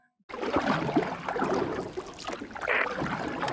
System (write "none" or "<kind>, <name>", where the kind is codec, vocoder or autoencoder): none